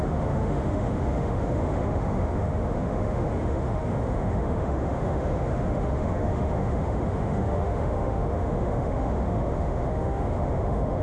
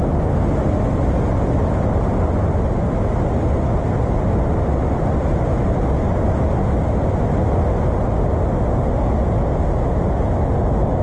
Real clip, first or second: second